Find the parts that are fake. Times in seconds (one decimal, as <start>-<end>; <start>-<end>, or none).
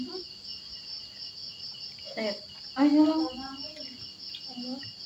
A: none